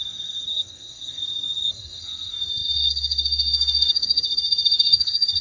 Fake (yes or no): yes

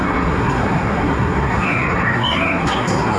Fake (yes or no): yes